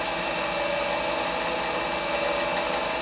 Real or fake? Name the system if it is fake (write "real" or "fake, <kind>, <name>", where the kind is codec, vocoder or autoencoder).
real